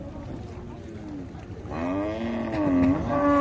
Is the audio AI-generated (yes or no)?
no